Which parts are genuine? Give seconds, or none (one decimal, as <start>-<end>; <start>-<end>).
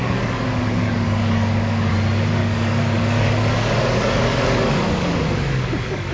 1.9-2.4